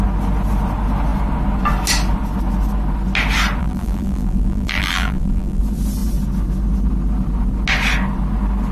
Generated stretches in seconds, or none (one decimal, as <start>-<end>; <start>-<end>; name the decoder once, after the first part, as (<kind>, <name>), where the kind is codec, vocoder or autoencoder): 3.6-5.6 (vocoder, BigVGAN v2)